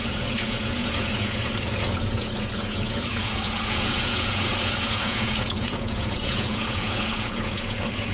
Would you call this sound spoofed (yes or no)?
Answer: yes